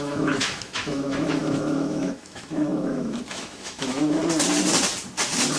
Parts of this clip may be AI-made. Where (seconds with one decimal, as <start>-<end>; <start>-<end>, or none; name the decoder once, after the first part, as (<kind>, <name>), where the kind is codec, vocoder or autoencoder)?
0.0-4.2 (autoencoder, DAC-VAE)